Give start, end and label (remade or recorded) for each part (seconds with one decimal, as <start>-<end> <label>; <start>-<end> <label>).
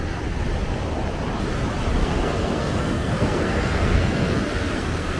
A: 0.0-2.0 recorded; 2.0-5.2 remade